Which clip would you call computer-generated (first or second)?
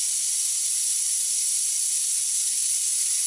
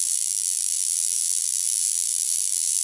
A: second